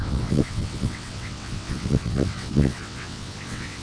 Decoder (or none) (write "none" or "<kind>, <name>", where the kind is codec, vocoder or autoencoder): vocoder, WaveNeXt